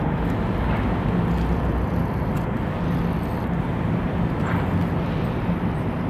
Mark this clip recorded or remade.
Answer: recorded